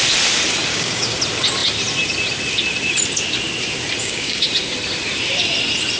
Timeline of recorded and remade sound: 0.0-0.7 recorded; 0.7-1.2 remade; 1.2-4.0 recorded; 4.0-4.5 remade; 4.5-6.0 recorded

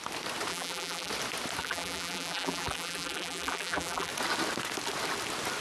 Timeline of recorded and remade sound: 0.0-0.5 recorded; 0.5-1.1 remade; 1.1-1.6 recorded; 1.6-4.1 remade; 4.1-5.6 recorded